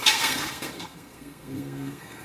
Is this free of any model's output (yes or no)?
no